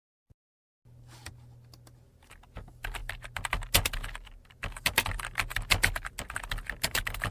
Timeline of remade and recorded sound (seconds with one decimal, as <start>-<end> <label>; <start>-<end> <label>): 0.0-7.3 recorded